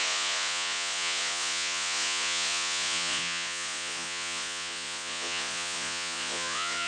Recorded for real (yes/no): no